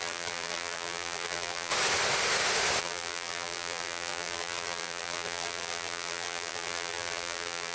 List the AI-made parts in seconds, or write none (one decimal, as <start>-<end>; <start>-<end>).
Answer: 0.0-1.7; 2.8-7.7